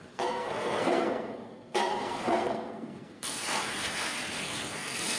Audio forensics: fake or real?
fake